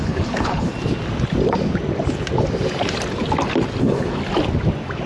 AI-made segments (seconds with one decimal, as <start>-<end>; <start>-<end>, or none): 0.0-0.7; 3.8-4.2